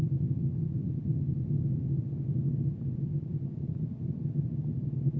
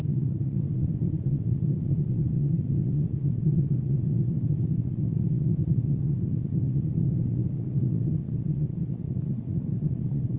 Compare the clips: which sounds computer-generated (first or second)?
second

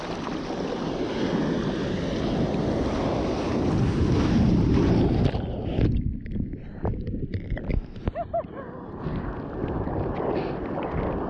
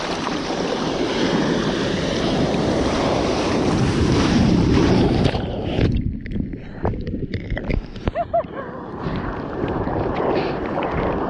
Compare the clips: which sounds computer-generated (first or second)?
second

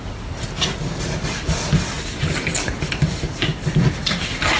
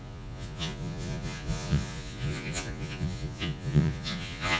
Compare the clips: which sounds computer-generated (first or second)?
second